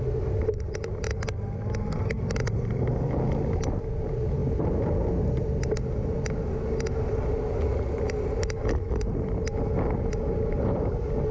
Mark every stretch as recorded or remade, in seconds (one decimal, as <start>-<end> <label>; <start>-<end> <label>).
0.0-11.3 recorded